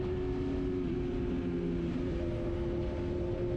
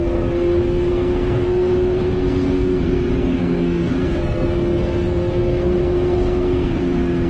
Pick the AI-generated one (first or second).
second